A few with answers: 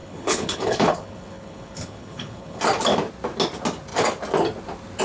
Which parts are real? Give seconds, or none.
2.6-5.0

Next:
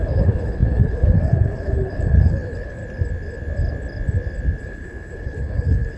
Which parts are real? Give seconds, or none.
2.8-4.6